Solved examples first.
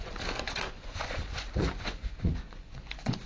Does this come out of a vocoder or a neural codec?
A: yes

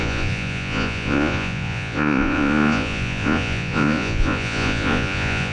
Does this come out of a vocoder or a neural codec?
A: yes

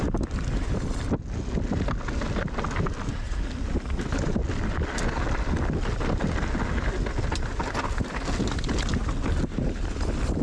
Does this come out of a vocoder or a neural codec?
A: no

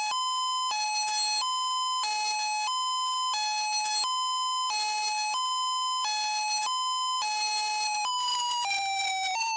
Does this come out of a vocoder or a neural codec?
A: no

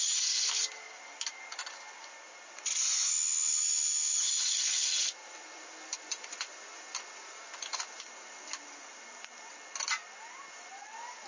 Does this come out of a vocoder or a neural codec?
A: no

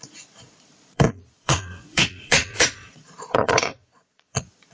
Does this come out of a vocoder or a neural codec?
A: yes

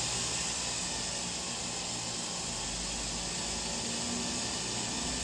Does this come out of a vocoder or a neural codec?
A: no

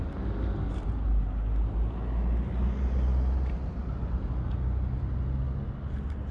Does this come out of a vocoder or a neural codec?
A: no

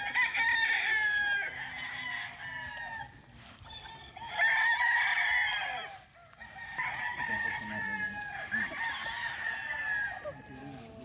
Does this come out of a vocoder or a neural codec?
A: no